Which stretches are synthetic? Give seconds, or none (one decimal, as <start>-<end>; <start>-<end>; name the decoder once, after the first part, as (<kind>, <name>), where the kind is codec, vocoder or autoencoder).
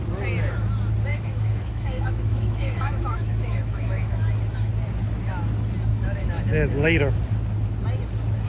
1.1-4.7 (autoencoder, DAC-VAE); 5.9-7.2